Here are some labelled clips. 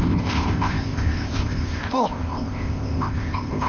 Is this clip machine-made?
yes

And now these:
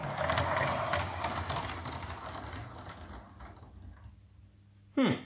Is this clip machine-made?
no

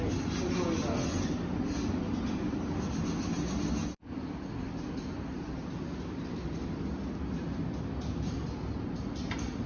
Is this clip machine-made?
no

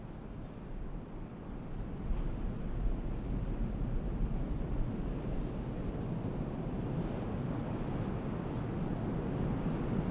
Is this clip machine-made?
no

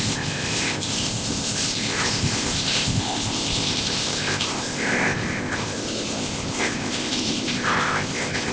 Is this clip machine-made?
yes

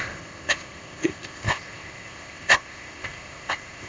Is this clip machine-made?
yes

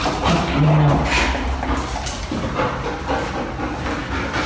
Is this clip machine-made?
no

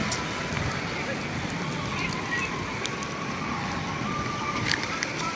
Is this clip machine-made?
no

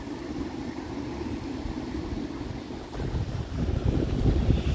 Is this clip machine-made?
no